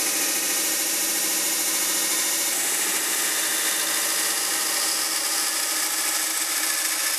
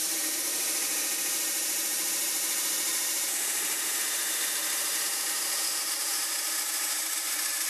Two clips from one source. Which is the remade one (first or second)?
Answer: second